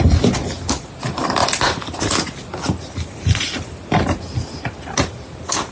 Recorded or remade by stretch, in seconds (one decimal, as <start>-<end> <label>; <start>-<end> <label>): 0.0-5.7 recorded